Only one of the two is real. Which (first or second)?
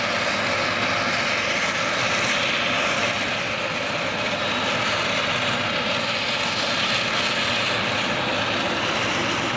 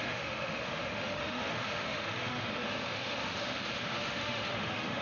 first